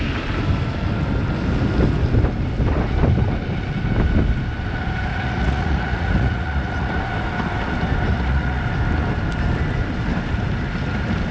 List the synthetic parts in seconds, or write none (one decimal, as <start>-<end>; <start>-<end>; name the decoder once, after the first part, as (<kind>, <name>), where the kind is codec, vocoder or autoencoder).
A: 5.1-7.0 (vocoder, Vocos); 8.1-8.6